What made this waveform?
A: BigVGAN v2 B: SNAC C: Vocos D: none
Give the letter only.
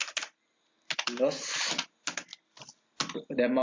D